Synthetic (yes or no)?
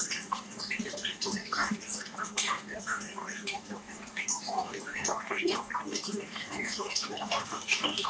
yes